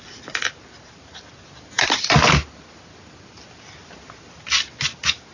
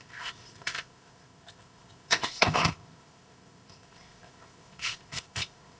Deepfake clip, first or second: second